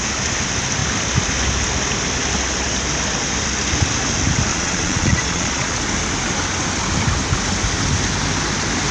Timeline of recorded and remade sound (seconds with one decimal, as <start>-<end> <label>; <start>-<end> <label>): 0.0-4.5 recorded; 4.5-5.8 remade; 5.8-8.9 recorded